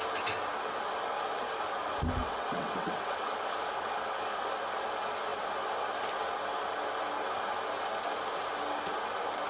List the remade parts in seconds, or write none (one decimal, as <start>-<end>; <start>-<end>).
2.2-3.3